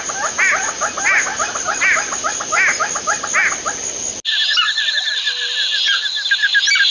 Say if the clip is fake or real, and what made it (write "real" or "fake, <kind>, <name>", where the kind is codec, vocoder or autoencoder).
real